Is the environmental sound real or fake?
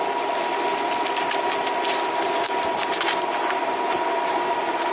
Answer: real